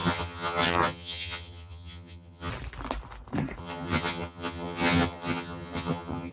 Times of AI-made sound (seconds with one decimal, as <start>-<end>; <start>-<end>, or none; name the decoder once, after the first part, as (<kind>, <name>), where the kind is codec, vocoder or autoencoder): 0.0-2.5 (vocoder, HiFi-GAN); 3.6-6.3